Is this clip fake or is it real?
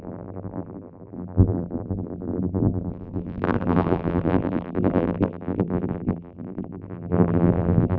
fake